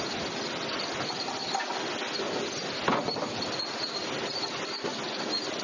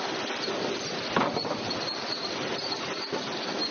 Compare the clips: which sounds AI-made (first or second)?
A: second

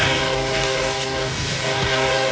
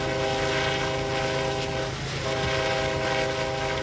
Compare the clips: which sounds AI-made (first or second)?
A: first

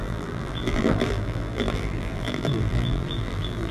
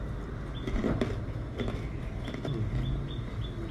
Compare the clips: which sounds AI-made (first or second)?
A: first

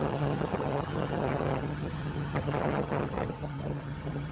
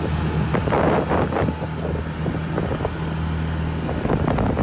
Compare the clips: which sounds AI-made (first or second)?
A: first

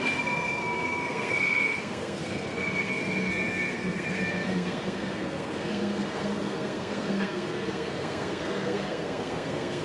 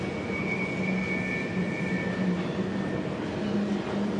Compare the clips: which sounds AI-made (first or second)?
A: first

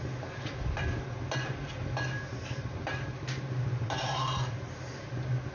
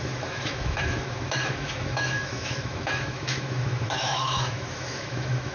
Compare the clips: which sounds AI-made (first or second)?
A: second